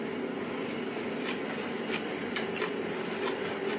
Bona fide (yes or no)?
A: yes